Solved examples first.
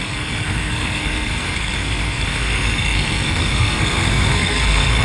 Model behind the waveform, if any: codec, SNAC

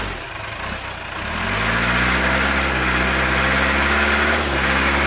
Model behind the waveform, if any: none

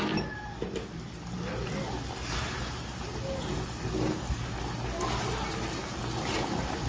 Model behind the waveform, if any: none